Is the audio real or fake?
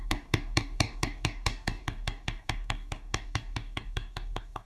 fake